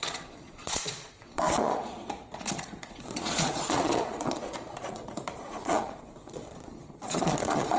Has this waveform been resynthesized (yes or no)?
yes